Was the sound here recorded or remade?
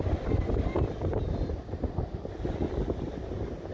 recorded